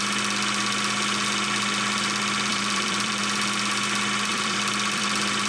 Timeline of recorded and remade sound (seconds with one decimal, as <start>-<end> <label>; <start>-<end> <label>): 0.0-2.5 recorded; 2.5-3.2 remade; 3.2-4.3 recorded; 4.3-5.5 remade